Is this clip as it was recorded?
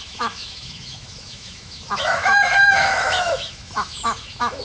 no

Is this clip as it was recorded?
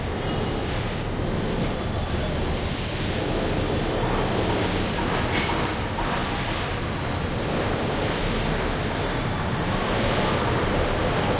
yes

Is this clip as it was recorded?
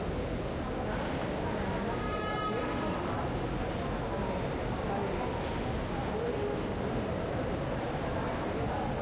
yes